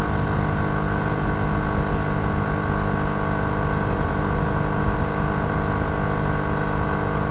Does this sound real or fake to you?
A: real